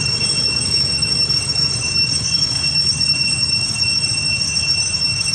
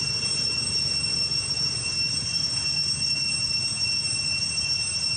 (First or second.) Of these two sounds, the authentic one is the second